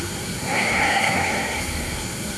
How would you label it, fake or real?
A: fake